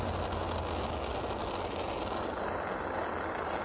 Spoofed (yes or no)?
no